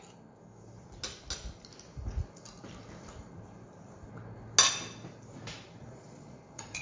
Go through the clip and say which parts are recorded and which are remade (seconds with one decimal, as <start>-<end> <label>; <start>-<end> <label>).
0.0-5.8 recorded; 5.8-6.8 remade